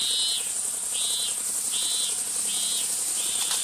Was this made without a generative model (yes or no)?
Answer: yes